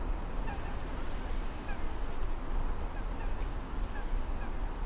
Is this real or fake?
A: real